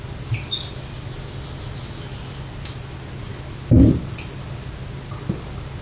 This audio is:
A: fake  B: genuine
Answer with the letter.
B